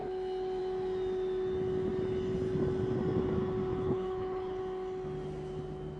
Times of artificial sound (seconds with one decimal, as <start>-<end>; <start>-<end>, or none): 3.7-4.6